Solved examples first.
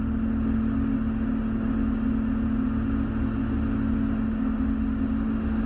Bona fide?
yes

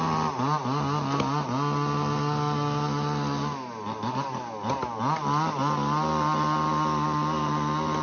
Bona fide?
yes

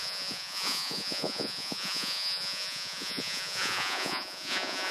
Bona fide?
no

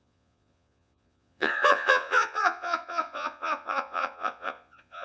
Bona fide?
no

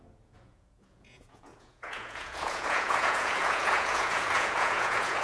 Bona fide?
no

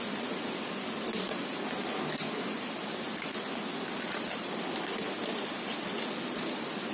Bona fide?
yes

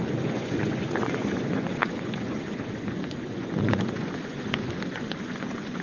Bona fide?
no